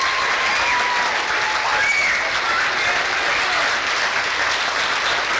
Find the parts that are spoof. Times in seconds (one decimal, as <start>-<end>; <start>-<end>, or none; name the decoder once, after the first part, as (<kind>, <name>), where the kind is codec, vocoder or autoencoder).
none